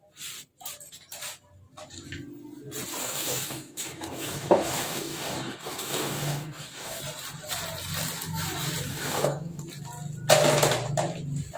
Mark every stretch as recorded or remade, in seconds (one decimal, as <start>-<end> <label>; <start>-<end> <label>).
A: 0.0-3.0 recorded; 3.0-7.0 remade; 7.0-8.9 recorded; 8.9-9.6 remade; 9.6-11.6 recorded